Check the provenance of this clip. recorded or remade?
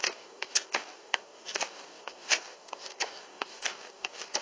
remade